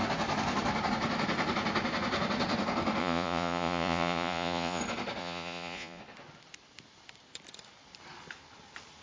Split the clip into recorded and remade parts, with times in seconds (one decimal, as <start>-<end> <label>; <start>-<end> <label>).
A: 0.0-3.0 recorded; 3.0-4.8 remade; 4.8-5.2 recorded; 5.2-6.0 remade; 6.0-9.0 recorded